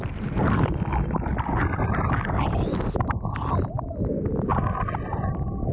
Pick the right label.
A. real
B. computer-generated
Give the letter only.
A